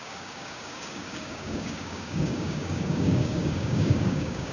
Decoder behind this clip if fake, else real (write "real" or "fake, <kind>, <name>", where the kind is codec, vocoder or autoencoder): fake, codec, DAC